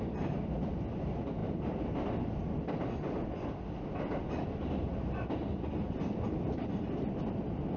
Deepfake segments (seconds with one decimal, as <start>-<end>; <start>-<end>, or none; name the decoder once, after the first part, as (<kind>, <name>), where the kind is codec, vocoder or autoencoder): none